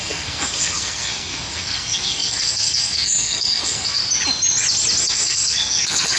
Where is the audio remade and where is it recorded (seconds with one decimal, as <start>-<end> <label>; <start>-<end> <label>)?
0.0-4.0 remade; 4.0-5.0 recorded; 5.0-6.2 remade